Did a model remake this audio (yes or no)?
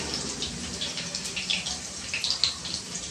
no